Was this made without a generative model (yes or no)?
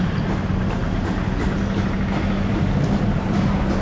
yes